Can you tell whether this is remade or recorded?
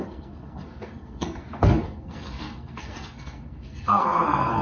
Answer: remade